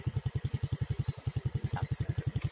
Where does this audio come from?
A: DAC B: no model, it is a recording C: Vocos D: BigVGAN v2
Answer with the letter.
B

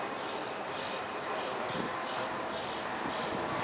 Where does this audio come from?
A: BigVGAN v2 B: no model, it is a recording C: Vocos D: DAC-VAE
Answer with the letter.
A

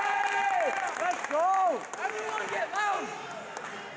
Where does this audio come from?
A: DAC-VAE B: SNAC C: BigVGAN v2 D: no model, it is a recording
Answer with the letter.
D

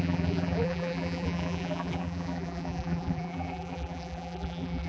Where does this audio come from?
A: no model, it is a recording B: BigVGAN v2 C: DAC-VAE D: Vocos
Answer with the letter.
B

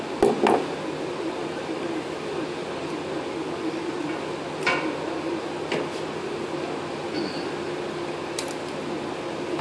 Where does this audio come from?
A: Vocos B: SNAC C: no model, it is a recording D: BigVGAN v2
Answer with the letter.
C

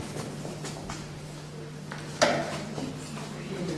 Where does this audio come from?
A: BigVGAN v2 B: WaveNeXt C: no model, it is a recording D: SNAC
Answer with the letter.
C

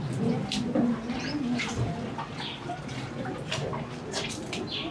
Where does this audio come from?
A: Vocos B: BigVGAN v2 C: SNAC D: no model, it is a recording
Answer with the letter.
D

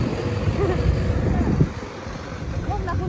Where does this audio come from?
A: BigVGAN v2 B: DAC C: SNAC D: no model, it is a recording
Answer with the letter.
D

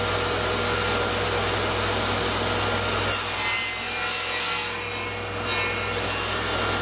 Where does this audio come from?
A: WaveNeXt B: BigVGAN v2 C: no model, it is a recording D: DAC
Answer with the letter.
C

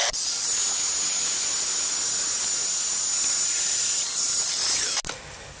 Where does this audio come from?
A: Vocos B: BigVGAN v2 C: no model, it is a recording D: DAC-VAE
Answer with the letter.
C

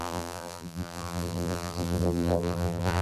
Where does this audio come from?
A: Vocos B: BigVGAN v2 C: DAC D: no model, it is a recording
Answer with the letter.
B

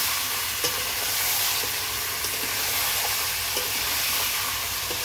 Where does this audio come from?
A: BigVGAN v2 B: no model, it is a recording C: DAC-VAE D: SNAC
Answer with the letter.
B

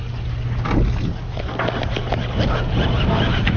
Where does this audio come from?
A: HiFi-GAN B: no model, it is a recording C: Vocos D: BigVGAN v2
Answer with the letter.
B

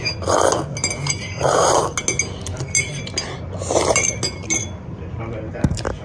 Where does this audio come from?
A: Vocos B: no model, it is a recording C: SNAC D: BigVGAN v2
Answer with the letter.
B